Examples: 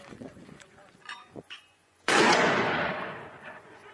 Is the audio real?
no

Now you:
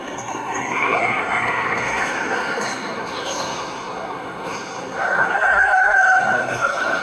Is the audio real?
no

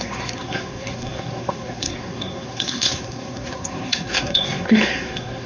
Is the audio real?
no